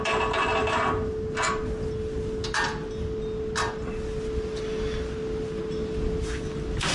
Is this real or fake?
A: real